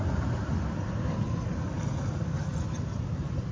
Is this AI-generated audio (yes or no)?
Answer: no